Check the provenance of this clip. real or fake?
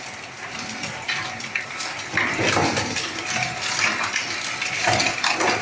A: real